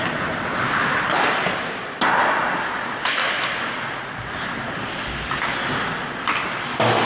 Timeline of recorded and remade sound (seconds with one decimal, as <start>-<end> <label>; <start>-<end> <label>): 0.0-7.1 recorded

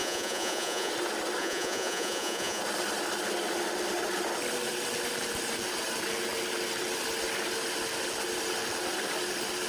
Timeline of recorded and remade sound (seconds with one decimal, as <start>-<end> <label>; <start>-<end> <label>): 0.0-0.9 remade; 0.9-1.4 recorded; 1.4-2.6 remade; 2.6-9.7 recorded

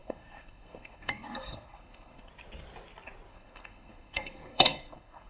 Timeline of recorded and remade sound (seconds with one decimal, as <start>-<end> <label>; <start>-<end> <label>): 0.0-2.3 remade; 2.3-3.3 recorded; 3.3-5.3 remade

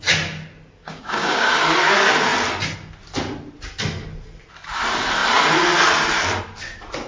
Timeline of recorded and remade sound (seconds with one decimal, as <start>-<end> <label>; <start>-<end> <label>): 0.0-0.8 recorded; 0.8-1.5 remade; 1.5-7.1 recorded

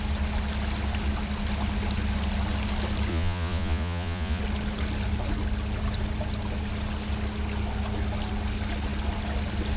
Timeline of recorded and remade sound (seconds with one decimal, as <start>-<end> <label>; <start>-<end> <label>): 0.0-3.1 recorded; 3.1-4.4 remade; 4.4-9.8 recorded

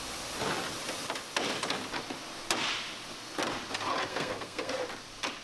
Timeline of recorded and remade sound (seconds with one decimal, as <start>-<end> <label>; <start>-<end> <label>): 0.0-4.1 recorded; 4.1-4.7 remade; 4.7-5.4 recorded

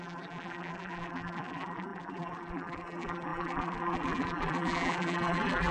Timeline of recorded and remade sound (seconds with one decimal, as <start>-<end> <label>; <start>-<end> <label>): 0.0-5.7 remade